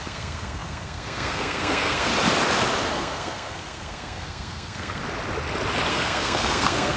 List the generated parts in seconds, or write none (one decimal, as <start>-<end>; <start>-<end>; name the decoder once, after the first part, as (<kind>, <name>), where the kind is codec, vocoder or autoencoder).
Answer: 0.0-2.1 (codec, SNAC); 2.9-5.0; 5.9-7.0